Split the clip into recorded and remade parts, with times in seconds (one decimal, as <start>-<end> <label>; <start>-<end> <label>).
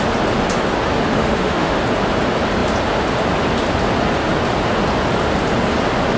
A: 0.0-1.2 recorded; 1.2-1.8 remade; 1.8-6.2 recorded